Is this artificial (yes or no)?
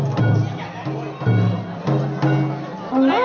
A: no